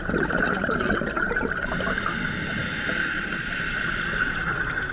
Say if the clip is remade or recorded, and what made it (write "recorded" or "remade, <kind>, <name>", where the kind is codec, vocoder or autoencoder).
recorded